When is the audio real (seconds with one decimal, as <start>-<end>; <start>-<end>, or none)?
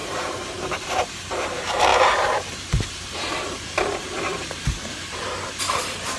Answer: none